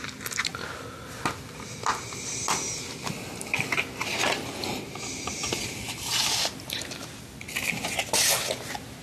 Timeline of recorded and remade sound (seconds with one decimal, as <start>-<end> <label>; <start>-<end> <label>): 0.0-9.0 recorded